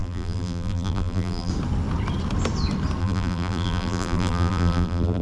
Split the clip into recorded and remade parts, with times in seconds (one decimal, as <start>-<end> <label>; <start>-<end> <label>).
0.0-1.5 remade; 1.5-3.0 recorded; 3.0-5.2 remade